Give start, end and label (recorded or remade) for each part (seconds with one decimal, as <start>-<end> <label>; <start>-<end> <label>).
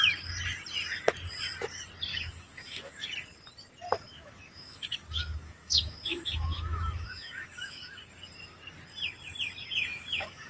0.0-2.1 recorded; 2.1-3.1 remade; 3.1-4.1 recorded; 4.1-8.0 remade; 8.0-9.9 recorded; 9.9-10.5 remade